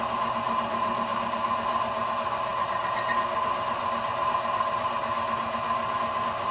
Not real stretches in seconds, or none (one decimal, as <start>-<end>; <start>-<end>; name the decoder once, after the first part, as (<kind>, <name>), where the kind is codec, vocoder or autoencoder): none